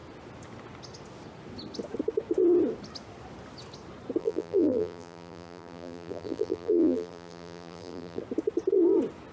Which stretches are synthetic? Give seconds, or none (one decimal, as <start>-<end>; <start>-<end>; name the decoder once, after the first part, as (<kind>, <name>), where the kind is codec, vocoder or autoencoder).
4.2-8.2 (vocoder, BigVGAN v2)